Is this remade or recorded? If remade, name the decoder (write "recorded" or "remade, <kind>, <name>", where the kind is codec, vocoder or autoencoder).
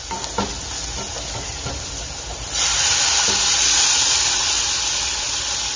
remade, vocoder, BigVGAN v2